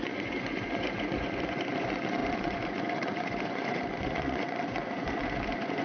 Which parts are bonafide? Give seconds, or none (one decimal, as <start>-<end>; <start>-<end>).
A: none